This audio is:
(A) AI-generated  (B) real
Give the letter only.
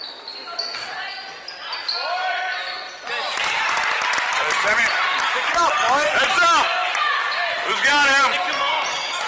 B